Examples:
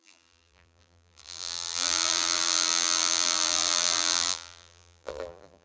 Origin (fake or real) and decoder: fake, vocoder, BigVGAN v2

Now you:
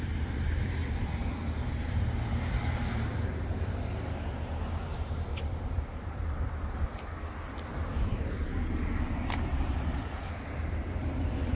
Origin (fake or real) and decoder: fake, vocoder, BigVGAN v2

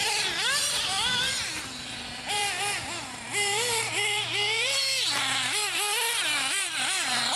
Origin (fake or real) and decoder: fake, vocoder, BigVGAN v2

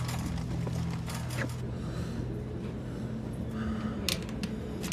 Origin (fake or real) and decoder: real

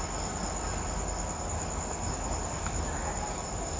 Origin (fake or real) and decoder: real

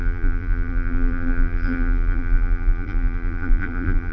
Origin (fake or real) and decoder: fake, vocoder, BigVGAN v2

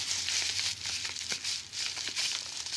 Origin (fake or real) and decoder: real